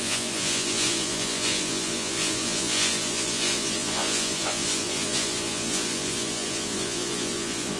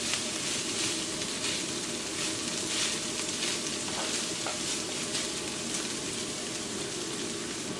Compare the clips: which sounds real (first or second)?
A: second